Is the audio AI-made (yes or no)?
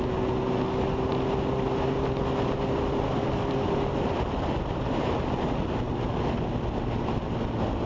no